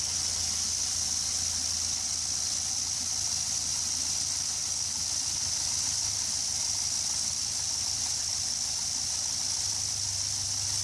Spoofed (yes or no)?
no